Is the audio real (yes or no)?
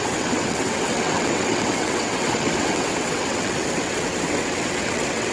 no